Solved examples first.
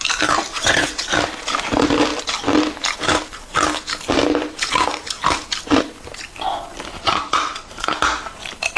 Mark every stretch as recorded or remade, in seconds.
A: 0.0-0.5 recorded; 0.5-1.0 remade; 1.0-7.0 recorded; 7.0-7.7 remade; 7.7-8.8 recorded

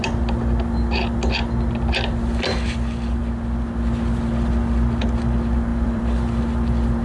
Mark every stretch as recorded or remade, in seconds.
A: 0.0-5.7 recorded; 5.7-6.4 remade; 6.4-7.0 recorded